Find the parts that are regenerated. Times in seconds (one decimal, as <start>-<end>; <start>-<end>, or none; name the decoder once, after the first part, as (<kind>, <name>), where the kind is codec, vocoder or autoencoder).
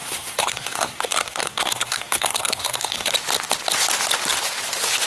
0.0-3.1 (codec, SNAC)